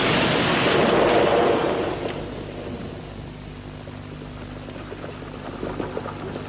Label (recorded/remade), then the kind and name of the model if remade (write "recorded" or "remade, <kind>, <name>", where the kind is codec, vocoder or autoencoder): recorded